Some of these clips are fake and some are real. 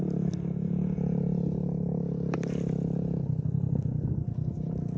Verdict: real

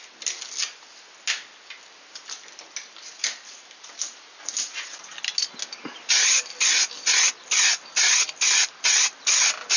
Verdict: real